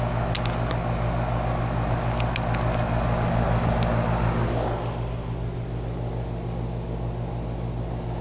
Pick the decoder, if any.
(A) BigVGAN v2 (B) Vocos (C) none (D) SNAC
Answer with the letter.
C